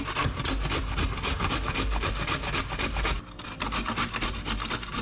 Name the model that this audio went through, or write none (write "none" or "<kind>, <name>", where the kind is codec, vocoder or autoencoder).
none